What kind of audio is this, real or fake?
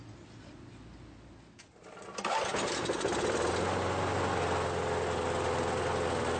real